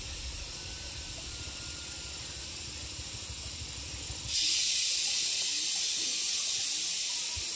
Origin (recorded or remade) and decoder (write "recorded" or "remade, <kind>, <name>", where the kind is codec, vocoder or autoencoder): recorded